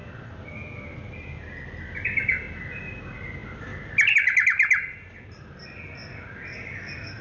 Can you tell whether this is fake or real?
real